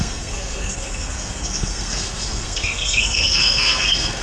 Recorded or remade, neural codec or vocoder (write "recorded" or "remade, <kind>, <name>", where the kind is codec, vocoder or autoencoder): remade, codec, SNAC